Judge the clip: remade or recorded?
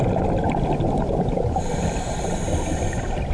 recorded